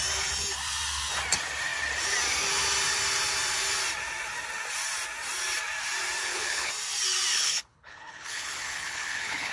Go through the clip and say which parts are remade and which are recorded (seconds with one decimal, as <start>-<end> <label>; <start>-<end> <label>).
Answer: 0.0-6.2 recorded; 6.2-6.7 remade; 6.7-7.3 recorded; 7.3-9.5 remade